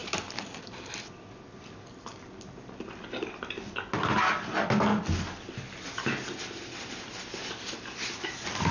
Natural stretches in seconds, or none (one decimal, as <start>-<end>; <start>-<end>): 0.0-8.7